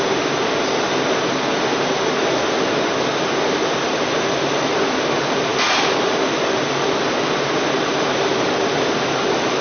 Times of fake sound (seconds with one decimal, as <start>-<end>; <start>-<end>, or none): none

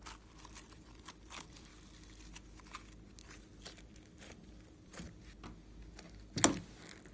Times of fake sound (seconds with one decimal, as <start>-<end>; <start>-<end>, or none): 0.0-1.7; 3.4-4.9

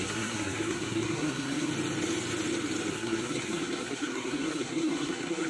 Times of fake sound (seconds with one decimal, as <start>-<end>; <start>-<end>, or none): 0.0-1.7; 2.9-5.5

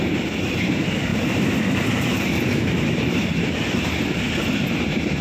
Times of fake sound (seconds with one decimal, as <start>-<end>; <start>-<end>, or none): 1.1-4.2

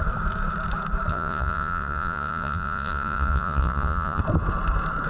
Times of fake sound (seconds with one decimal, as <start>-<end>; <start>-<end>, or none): 1.1-4.2

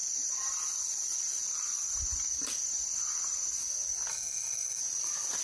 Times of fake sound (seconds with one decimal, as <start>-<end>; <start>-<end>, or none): 4.1-4.8